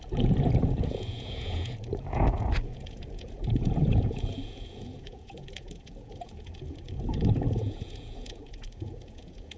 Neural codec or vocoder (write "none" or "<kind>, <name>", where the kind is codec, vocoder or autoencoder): vocoder, Vocos